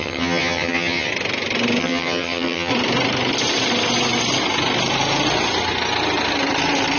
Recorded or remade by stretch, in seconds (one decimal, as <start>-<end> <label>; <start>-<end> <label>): 0.0-1.1 remade; 1.1-1.8 recorded; 1.8-2.7 remade; 2.7-7.0 recorded